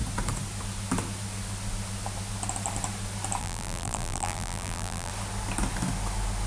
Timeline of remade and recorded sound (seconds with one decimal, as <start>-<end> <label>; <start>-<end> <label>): 0.0-3.4 recorded; 3.4-5.1 remade; 5.1-6.5 recorded